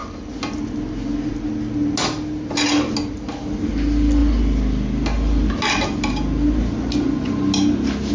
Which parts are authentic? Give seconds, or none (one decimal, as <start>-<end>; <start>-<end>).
0.0-8.1